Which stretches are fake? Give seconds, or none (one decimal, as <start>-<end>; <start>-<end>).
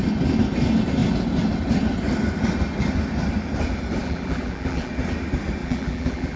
4.0-4.9; 5.6-6.4